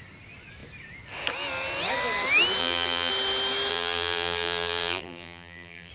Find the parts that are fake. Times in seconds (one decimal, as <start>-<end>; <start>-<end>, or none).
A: 2.6-3.1; 3.7-5.9

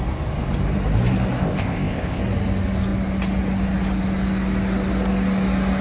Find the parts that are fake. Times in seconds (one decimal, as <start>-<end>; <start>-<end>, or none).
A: 1.4-2.2

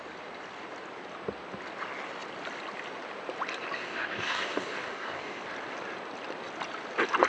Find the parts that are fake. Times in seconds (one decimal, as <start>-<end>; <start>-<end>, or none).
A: 3.8-5.4